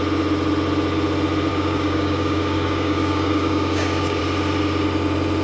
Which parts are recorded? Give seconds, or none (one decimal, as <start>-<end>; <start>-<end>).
0.0-1.5; 4.2-5.4